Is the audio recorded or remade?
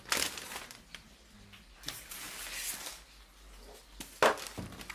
recorded